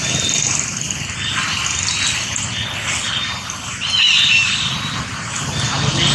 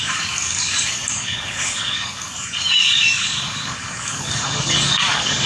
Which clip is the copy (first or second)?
second